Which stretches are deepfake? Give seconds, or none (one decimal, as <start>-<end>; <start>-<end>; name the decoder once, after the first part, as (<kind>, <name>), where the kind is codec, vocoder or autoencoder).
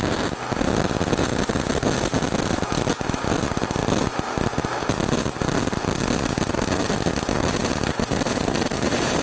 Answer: 7.6-9.2 (vocoder, BigVGAN v2)